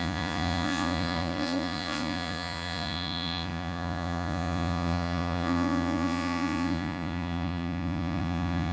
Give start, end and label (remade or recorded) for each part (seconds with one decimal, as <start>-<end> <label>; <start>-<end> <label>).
0.0-8.7 remade